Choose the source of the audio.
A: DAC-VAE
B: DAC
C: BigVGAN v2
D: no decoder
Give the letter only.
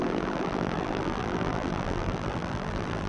C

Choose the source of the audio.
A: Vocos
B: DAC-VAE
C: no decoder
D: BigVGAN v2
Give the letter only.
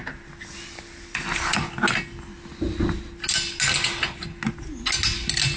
C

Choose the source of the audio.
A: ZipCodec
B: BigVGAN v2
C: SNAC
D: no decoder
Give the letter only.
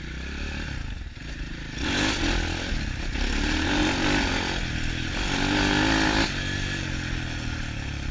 D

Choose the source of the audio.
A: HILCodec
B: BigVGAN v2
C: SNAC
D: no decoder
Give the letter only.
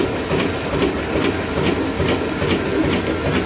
D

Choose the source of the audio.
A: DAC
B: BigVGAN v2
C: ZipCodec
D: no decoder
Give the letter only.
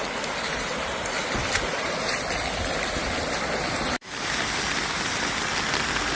D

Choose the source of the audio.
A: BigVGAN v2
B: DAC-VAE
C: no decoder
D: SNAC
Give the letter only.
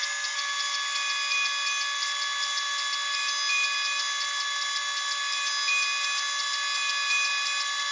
C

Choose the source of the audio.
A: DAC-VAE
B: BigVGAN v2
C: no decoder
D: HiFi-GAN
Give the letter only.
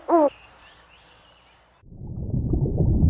B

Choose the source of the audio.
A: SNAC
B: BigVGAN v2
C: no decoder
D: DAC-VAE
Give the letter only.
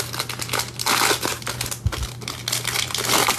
C